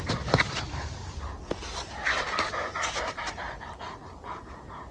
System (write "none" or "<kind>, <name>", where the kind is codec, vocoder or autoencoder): none